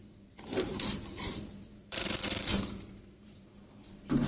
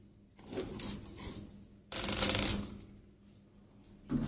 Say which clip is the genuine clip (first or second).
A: second